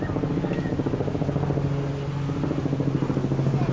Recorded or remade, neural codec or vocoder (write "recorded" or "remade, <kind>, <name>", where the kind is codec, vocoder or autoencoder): recorded